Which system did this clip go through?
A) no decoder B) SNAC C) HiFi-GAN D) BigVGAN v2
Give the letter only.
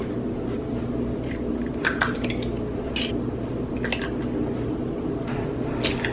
A